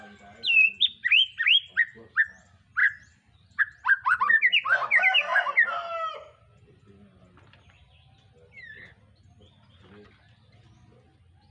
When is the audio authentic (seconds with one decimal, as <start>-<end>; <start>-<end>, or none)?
0.0-11.5